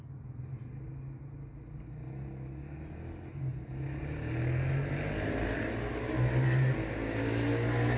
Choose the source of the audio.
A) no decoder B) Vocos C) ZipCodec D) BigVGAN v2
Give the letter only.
A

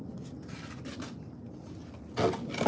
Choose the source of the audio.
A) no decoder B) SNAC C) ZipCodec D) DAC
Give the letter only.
A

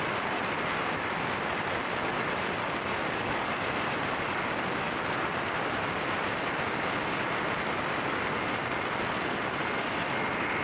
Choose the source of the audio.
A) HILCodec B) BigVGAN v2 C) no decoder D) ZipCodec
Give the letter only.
C